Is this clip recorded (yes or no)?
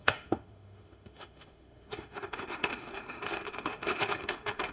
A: no